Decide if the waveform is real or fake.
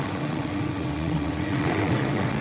fake